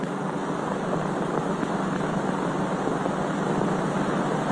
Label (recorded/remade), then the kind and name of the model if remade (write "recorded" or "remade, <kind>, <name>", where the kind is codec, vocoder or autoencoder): recorded